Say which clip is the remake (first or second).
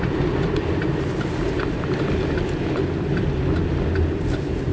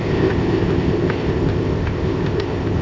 second